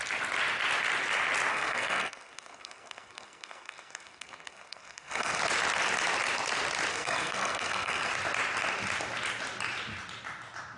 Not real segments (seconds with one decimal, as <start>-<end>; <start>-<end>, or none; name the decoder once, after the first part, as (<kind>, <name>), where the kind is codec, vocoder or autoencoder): 1.5-5.4 (codec, SNAC); 6.9-8.1